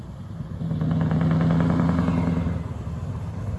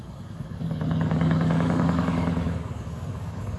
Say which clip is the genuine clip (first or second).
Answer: first